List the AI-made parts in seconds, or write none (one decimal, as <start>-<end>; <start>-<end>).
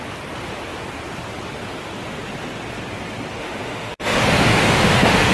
3.4-5.3